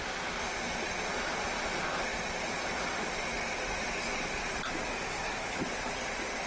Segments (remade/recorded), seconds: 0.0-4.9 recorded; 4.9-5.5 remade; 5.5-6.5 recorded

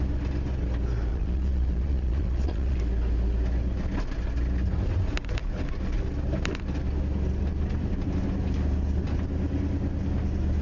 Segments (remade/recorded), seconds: 0.0-1.1 recorded; 1.1-2.8 remade; 2.8-10.6 recorded

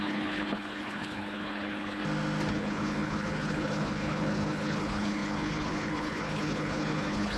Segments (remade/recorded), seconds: 0.0-2.0 remade; 2.0-2.5 recorded; 2.5-7.4 remade

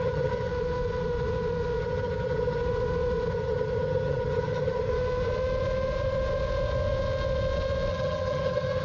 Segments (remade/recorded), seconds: 0.0-0.5 remade; 0.5-1.8 recorded; 1.8-2.6 remade; 2.6-3.3 recorded; 3.3-4.9 remade; 4.9-7.9 recorded; 7.9-8.8 remade

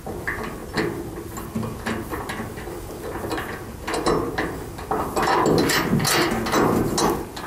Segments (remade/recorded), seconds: 0.0-7.5 recorded

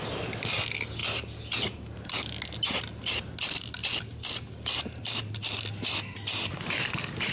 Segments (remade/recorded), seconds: 0.0-7.3 recorded